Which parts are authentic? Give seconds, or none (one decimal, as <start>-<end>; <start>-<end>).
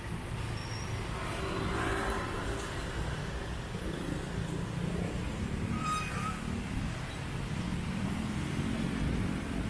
0.0-7.7; 9.2-9.7